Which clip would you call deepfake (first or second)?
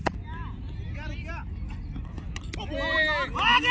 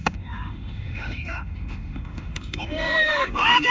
second